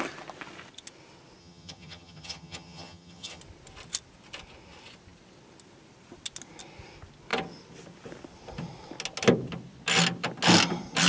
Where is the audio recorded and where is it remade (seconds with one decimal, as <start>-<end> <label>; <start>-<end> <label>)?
0.0-1.4 recorded; 1.4-3.4 remade; 3.4-11.1 recorded